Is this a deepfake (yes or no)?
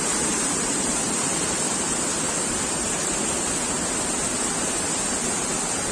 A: no